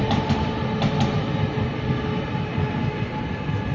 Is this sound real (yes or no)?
yes